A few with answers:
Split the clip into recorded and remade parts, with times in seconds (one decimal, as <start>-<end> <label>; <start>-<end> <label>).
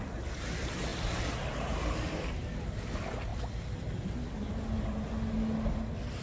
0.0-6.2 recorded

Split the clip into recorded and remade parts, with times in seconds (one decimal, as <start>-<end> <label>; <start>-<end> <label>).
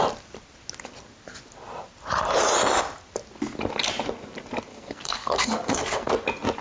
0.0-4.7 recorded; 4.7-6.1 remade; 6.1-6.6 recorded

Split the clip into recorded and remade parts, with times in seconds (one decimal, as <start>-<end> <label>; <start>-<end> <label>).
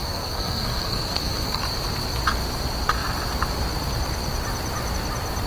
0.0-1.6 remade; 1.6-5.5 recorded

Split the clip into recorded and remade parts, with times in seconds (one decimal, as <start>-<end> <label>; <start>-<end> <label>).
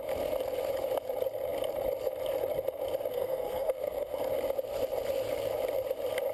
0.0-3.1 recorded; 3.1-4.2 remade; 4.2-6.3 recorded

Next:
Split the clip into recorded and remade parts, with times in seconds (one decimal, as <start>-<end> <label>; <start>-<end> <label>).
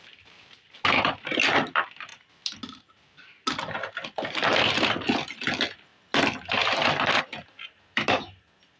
0.0-8.8 recorded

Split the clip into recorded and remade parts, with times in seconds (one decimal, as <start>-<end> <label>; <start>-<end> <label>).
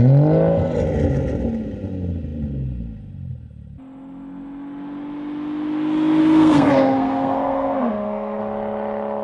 0.0-6.2 recorded; 6.2-8.4 remade; 8.4-9.2 recorded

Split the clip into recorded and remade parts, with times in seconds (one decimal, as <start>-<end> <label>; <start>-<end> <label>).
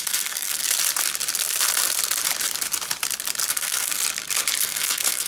0.0-0.6 remade; 0.6-3.5 recorded; 3.5-4.0 remade; 4.0-4.6 recorded; 4.6-5.3 remade